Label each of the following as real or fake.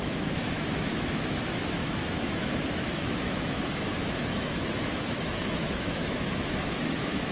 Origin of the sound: fake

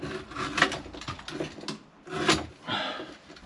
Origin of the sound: real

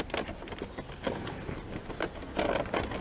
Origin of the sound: real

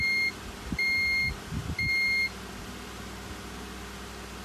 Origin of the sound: real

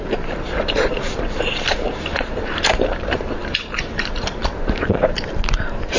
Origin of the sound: fake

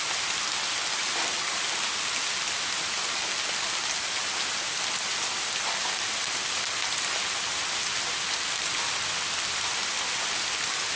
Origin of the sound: real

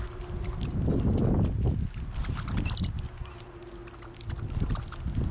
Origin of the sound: real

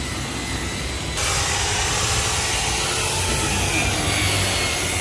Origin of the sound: real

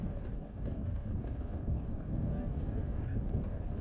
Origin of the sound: fake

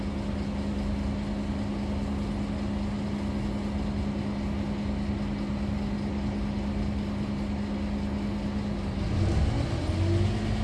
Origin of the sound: real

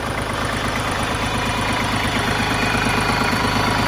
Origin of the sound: fake